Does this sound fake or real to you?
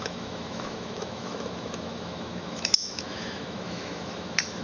fake